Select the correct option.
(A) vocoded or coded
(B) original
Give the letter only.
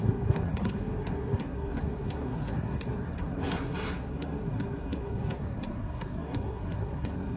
A